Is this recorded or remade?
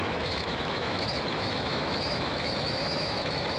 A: remade